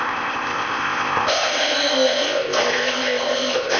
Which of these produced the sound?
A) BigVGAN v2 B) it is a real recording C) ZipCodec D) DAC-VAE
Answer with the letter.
C